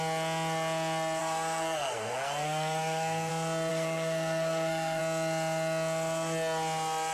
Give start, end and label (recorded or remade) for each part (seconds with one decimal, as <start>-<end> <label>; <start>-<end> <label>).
0.0-1.2 recorded; 1.2-3.3 remade; 3.3-3.7 recorded; 3.7-5.0 remade; 5.0-7.1 recorded